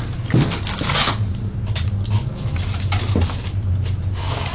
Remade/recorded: recorded